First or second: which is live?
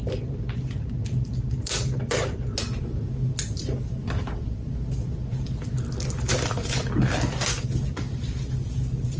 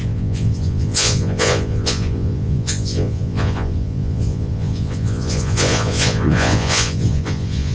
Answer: first